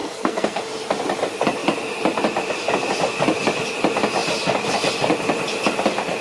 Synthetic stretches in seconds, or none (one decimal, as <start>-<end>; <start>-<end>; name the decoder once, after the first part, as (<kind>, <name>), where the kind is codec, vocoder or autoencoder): 0.0-0.6 (codec, SNAC)